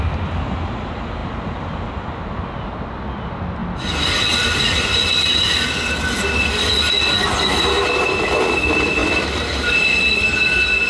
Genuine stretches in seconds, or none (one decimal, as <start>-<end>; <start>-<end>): 0.0-10.9